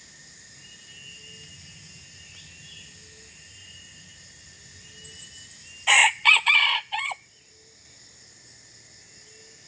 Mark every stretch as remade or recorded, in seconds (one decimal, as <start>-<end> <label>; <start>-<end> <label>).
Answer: 0.0-6.0 recorded; 6.0-7.5 remade; 7.5-9.7 recorded